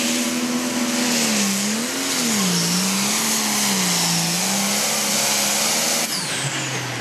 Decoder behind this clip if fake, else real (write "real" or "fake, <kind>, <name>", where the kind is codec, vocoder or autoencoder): real